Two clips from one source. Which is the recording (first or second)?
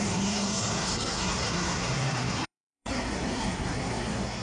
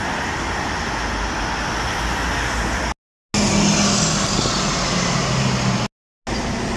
second